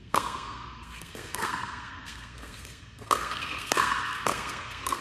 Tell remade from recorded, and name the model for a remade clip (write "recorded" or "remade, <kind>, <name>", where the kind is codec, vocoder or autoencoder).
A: remade, codec, SNAC